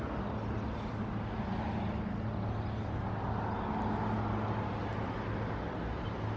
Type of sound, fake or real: real